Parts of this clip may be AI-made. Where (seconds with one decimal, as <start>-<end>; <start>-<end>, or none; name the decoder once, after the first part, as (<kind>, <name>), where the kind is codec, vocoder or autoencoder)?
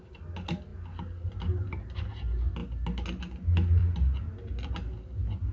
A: none